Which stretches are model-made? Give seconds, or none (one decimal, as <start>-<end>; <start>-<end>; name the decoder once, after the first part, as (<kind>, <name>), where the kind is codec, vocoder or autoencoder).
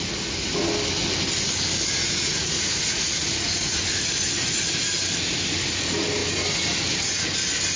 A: 2.0-4.1 (vocoder, Vocos)